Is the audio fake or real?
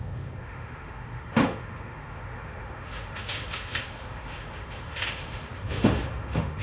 fake